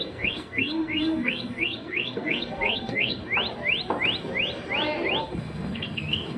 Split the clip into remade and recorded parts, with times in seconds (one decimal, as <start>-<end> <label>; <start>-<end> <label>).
0.0-3.2 remade; 3.2-5.2 recorded; 5.2-6.4 remade